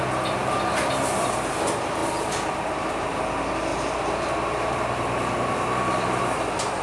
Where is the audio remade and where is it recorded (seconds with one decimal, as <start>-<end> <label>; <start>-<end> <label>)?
0.0-2.0 recorded; 2.0-3.2 remade; 3.2-3.7 recorded; 3.7-6.2 remade; 6.2-6.8 recorded